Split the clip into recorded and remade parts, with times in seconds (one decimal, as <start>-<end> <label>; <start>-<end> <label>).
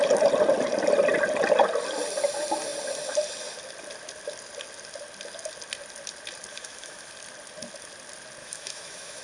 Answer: 0.0-6.5 recorded; 6.5-7.1 remade; 7.1-8.4 recorded; 8.4-9.2 remade